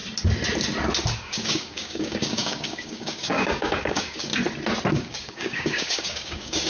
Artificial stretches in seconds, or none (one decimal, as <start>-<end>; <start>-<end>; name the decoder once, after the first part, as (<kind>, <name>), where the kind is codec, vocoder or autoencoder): 1.2-4.3 (codec, DAC); 4.9-6.7